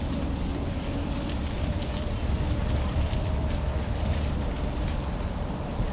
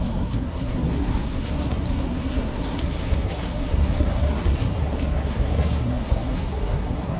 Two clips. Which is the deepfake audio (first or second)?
second